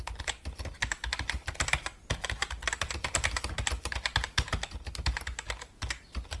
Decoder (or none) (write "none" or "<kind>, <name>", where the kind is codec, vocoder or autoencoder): none